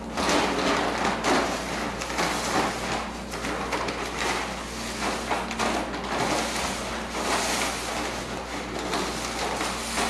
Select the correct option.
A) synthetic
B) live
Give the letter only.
B